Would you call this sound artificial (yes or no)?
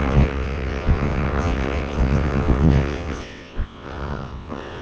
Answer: yes